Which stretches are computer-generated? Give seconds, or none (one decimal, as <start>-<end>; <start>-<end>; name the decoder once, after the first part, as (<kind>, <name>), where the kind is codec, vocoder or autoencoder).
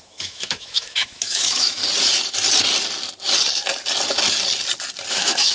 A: 0.0-1.8 (autoencoder, DAC-VAE); 5.1-5.5